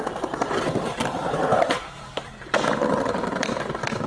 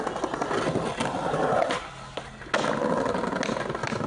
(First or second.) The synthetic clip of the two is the first